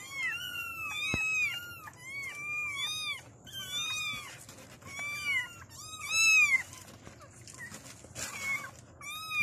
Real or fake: real